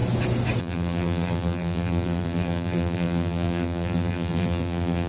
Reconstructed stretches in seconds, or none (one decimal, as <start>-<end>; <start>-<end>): 0.6-5.1